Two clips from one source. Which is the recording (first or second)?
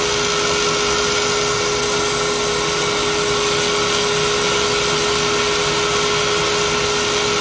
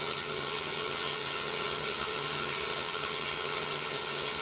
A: first